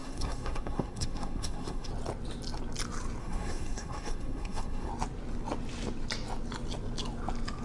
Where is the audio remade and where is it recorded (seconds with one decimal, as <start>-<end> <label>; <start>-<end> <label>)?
0.0-1.9 remade; 1.9-3.2 recorded; 3.2-4.9 remade; 4.9-7.6 recorded